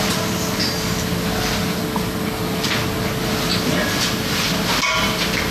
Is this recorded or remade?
recorded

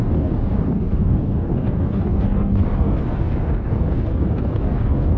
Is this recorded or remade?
remade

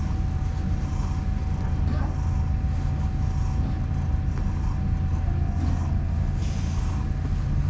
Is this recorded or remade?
recorded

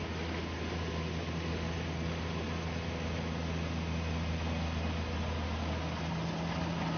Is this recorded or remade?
recorded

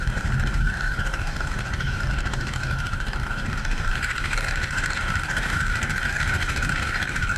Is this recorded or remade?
remade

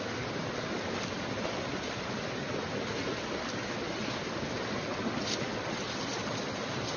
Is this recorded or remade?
recorded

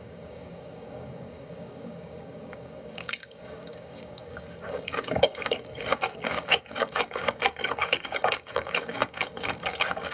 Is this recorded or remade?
remade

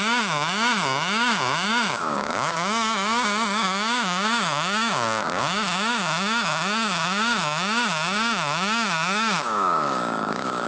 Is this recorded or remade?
remade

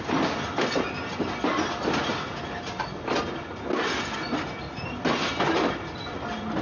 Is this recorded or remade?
recorded